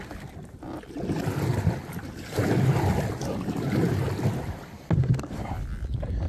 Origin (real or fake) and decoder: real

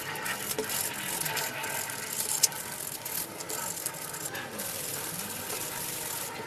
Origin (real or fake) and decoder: fake, vocoder, BigVGAN v2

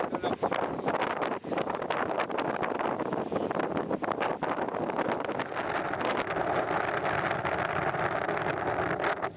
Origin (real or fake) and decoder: real